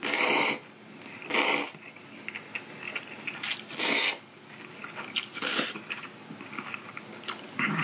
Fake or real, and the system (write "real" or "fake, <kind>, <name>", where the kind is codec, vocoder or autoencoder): real